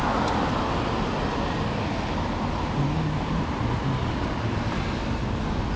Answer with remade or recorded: recorded